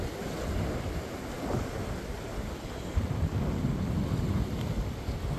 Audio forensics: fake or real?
real